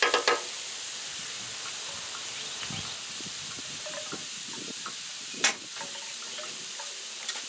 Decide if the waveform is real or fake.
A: real